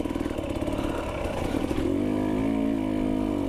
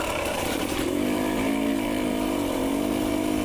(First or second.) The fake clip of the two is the second